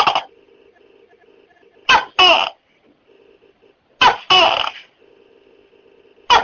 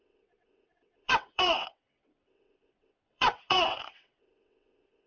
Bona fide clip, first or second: first